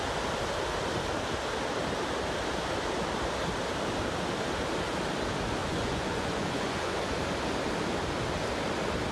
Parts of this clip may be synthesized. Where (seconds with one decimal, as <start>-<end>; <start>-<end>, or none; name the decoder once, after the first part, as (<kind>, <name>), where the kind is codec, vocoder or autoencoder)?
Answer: 5.6-7.0 (vocoder, Vocos)